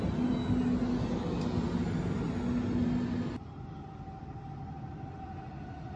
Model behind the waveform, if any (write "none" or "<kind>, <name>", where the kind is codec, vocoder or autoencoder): none